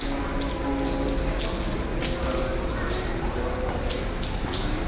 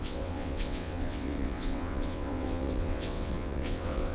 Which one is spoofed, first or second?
second